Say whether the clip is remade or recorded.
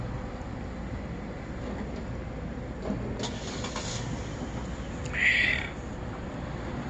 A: recorded